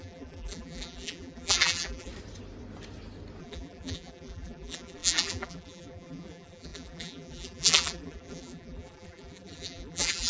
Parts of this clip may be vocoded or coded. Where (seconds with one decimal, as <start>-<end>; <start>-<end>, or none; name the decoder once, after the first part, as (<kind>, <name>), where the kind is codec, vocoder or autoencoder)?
0.0-2.1 (vocoder, BigVGAN v2); 3.4-10.3